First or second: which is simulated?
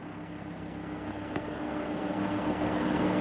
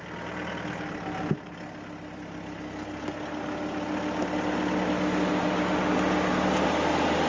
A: first